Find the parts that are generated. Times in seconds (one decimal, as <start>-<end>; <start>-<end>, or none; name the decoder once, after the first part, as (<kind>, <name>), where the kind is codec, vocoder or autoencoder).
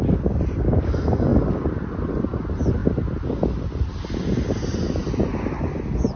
none